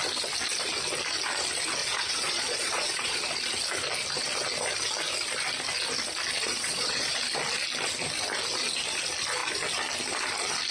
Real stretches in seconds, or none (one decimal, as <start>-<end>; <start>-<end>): 0.0-1.8; 3.2-6.4; 7.2-10.7